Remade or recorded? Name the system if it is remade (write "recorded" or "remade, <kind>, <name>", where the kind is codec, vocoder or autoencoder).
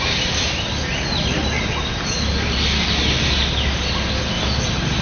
recorded